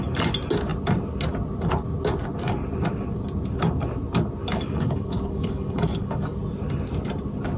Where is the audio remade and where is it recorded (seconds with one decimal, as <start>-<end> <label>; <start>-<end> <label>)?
0.0-4.4 recorded; 4.4-6.4 remade; 6.4-7.6 recorded